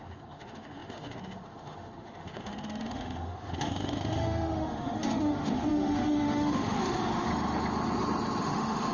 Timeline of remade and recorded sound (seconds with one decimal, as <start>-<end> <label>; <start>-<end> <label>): 0.0-7.3 remade; 7.3-8.4 recorded; 8.4-8.9 remade